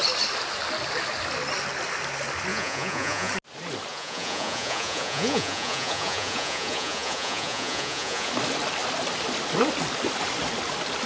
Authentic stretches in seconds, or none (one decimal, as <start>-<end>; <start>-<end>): 0.0-2.5; 3.3-3.9; 8.3-11.1